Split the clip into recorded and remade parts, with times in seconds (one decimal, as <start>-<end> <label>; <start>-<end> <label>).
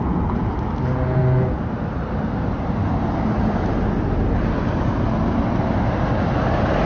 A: 0.0-6.9 recorded